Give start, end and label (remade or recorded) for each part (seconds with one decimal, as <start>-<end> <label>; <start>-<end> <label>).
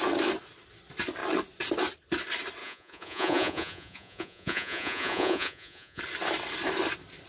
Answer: 0.0-2.6 recorded; 2.6-6.0 remade; 6.0-7.3 recorded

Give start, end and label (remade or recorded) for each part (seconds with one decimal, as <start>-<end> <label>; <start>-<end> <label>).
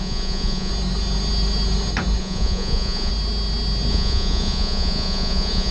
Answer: 0.0-0.7 remade; 0.7-2.2 recorded; 2.2-3.1 remade; 3.1-3.9 recorded; 3.9-5.7 remade